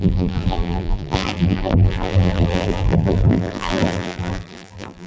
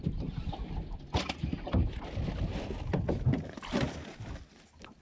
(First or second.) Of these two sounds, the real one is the second